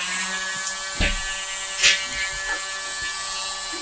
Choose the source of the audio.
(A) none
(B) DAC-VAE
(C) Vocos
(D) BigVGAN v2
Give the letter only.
A